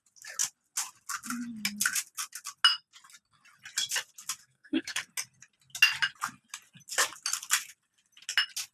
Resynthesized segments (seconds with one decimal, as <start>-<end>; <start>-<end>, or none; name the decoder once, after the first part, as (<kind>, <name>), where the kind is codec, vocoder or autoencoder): 4.4-5.1 (codec, SNAC)